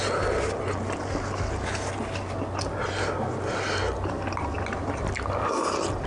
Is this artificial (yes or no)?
no